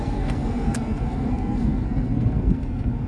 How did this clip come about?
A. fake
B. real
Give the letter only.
A